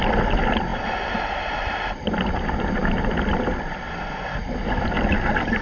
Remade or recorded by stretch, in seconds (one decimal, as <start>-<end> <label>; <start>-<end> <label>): 0.0-5.6 recorded